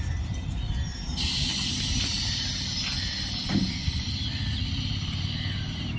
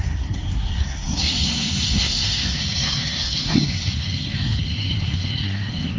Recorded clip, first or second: first